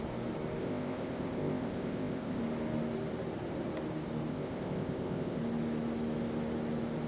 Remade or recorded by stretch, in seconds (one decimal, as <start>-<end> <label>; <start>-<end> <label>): 0.0-0.6 recorded; 0.6-2.4 remade; 2.4-4.3 recorded; 4.3-5.4 remade; 5.4-7.1 recorded